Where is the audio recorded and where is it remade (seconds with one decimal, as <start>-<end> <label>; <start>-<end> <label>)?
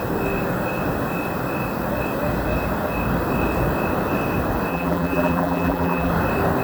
0.0-4.7 recorded; 4.7-6.1 remade; 6.1-6.6 recorded